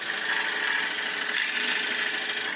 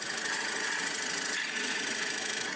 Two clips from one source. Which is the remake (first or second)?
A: second